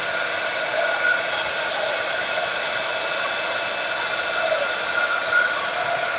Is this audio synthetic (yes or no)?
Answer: no